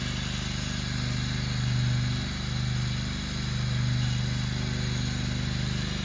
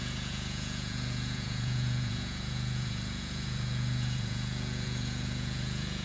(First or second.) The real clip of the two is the first